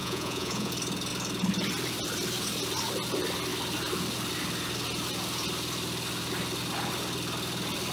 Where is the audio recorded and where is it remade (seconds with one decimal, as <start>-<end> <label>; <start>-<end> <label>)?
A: 0.0-0.7 remade; 0.7-7.9 recorded